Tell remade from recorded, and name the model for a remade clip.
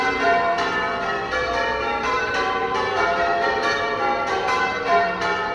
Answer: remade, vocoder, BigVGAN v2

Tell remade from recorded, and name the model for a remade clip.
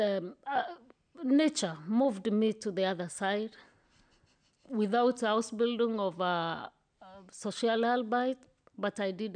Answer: recorded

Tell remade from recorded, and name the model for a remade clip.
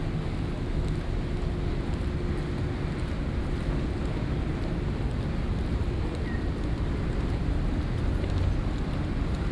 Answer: recorded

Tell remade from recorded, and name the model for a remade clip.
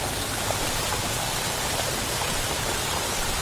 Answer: remade, vocoder, BigVGAN v2